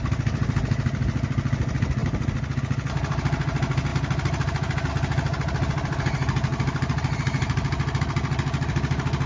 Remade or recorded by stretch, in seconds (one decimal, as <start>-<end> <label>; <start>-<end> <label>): 0.0-9.3 recorded